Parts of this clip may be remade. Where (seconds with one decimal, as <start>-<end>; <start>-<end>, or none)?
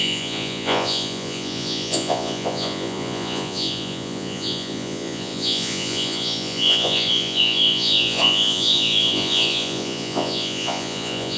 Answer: 0.0-11.4